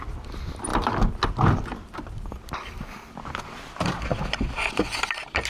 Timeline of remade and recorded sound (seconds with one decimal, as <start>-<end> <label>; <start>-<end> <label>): 0.0-0.7 recorded; 0.7-4.0 remade; 4.0-5.5 recorded